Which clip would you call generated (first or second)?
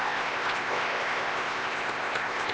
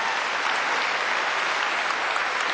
first